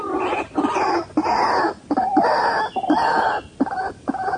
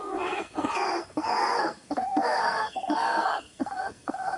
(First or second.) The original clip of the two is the first